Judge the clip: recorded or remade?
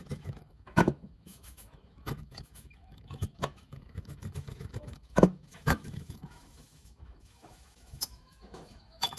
remade